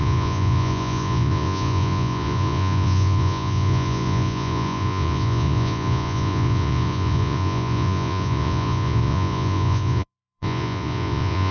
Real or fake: fake